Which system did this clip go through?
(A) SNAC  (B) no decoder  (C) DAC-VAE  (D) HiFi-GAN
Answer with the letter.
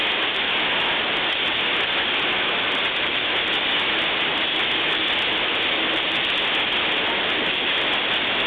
B